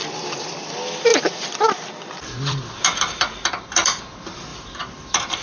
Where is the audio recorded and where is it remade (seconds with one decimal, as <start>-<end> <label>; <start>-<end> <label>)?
0.0-0.7 remade; 0.7-1.1 recorded; 1.1-4.0 remade; 4.0-4.5 recorded; 4.5-5.4 remade